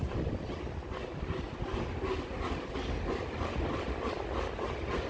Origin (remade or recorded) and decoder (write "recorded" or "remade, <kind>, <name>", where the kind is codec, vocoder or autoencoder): recorded